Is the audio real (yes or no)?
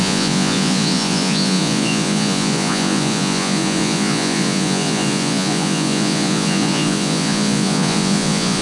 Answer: no